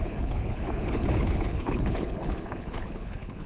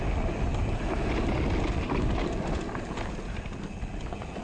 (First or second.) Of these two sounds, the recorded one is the second